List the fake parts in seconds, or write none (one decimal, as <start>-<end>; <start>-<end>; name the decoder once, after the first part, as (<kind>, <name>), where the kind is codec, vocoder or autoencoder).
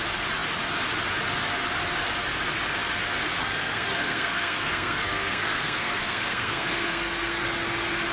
3.4-7.4 (codec, SNAC)